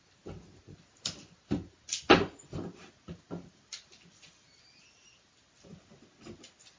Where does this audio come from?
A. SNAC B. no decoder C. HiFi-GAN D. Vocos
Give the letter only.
B